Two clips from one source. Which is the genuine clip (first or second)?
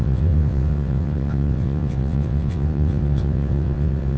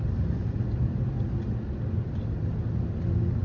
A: second